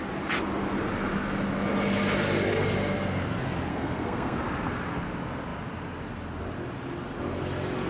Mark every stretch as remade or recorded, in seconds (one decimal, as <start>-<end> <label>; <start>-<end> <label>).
0.0-3.7 recorded; 3.7-4.4 remade; 4.4-7.9 recorded